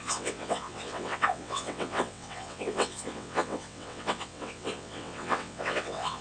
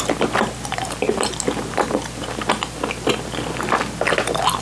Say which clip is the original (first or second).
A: second